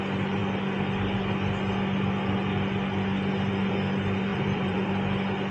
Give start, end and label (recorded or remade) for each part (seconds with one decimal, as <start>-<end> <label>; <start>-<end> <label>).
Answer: 0.0-4.3 recorded; 4.3-4.9 remade; 4.9-5.5 recorded